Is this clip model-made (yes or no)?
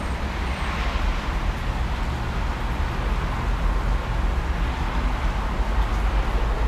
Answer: no